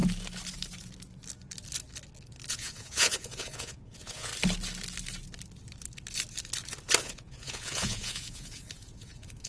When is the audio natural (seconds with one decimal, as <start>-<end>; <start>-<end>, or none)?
0.0-2.5; 4.3-7.0